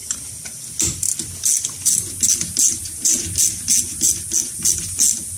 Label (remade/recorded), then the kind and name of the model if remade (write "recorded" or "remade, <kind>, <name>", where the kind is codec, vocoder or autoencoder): recorded